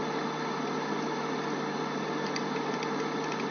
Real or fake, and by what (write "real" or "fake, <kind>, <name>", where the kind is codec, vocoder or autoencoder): real